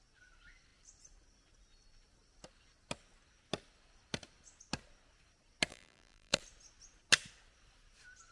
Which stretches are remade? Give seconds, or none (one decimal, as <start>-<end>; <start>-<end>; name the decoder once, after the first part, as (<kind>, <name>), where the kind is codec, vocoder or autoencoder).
5.7-6.4 (vocoder, BigVGAN v2)